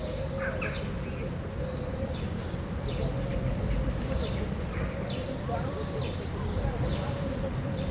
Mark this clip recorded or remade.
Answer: recorded